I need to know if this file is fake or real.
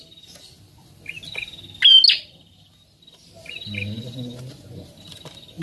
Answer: real